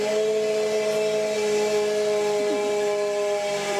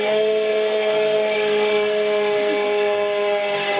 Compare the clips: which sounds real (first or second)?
first